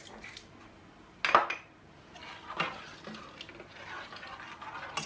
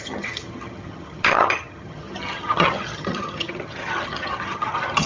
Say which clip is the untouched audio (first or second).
first